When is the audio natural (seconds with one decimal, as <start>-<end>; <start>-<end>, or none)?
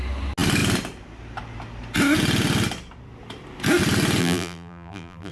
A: 0.0-4.2